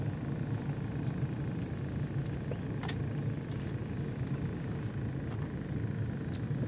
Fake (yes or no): no